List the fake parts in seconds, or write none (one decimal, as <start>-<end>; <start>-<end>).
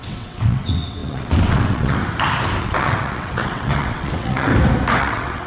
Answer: 0.0-2.0; 2.6-4.5; 5.0-5.5